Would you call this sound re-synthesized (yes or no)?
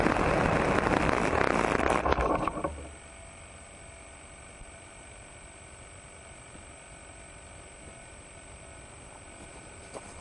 no